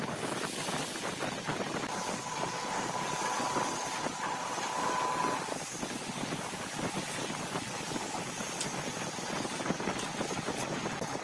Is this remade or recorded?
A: recorded